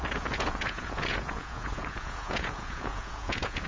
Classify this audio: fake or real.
fake